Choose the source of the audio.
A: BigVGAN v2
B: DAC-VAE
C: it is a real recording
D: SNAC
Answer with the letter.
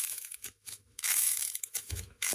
B